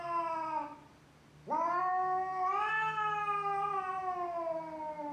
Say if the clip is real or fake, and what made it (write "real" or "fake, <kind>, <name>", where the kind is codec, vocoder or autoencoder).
real